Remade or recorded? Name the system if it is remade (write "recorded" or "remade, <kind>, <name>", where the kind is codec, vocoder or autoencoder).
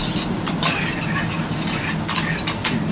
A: recorded